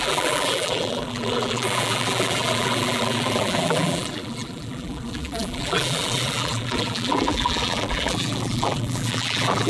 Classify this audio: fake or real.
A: fake